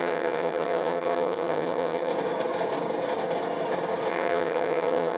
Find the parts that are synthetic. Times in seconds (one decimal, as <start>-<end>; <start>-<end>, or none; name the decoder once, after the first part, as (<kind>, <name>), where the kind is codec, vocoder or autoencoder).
0.0-2.1 (vocoder, HiFi-GAN); 4.1-5.2